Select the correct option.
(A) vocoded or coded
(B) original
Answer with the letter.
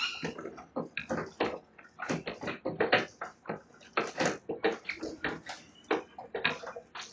B